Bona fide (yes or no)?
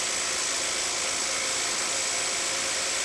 yes